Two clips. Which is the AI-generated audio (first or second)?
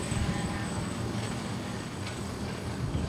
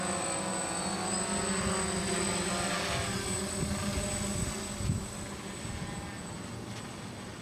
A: first